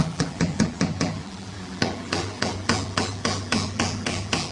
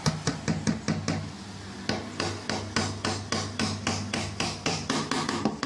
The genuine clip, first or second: second